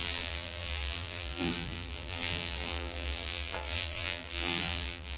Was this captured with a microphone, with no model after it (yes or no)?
no